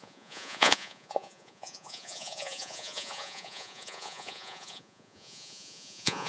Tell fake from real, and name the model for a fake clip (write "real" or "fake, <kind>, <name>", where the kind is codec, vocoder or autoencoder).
fake, vocoder, Vocos